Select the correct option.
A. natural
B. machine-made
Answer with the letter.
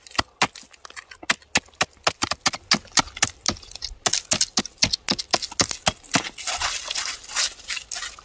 A